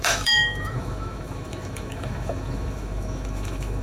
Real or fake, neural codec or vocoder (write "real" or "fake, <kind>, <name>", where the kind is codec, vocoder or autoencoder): fake, autoencoder, DAC-VAE